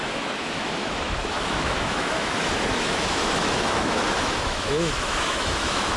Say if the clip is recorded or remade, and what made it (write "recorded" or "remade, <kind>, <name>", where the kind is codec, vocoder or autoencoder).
remade, autoencoder, DAC-VAE